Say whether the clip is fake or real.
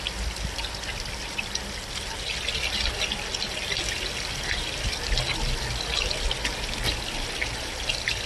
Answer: real